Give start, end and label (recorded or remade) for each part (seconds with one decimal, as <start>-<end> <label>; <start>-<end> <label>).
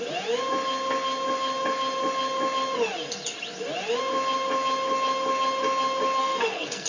0.0-6.2 recorded; 6.2-6.9 remade